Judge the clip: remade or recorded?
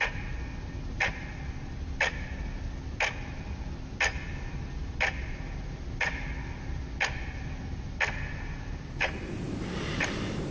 recorded